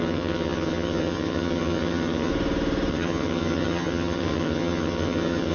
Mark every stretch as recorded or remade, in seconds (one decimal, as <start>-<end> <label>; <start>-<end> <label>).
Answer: 0.0-2.3 remade; 2.3-2.9 recorded; 2.9-5.5 remade

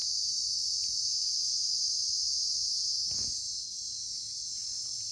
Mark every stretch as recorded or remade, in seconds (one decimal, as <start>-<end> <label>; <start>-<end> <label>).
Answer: 0.0-1.1 recorded; 1.1-1.7 remade; 1.7-5.1 recorded

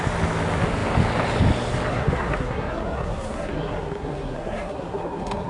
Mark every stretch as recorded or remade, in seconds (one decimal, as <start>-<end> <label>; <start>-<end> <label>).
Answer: 0.0-1.9 recorded; 1.9-5.5 remade

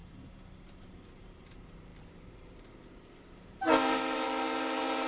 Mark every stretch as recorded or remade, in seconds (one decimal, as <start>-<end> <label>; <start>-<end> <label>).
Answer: 0.0-5.1 remade

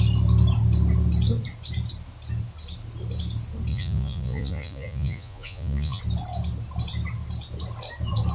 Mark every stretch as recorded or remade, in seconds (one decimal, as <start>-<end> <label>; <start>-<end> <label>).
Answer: 0.0-3.7 recorded; 3.7-6.0 remade; 6.0-8.3 recorded